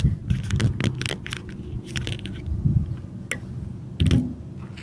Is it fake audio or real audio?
real